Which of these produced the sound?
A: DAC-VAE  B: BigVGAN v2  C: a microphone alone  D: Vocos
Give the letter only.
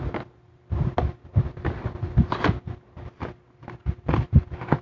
C